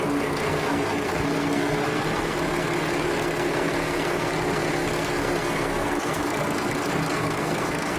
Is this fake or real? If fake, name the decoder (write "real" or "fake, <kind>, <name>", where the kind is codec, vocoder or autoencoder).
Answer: fake, codec, SNAC